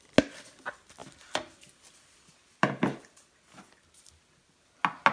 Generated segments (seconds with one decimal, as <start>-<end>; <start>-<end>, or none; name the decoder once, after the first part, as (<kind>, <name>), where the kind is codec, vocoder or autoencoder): 1.0-4.1 (vocoder, BigVGAN v2)